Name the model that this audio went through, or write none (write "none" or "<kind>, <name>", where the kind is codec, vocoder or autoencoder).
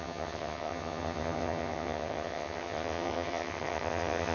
vocoder, HiFi-GAN